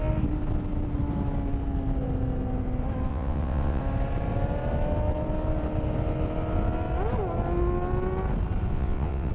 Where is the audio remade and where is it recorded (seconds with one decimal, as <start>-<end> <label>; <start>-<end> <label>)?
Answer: 0.0-3.1 recorded; 3.1-3.8 remade; 3.8-8.7 recorded; 8.7-9.3 remade